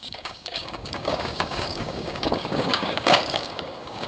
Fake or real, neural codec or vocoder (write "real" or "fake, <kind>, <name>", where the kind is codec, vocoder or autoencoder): fake, codec, DAC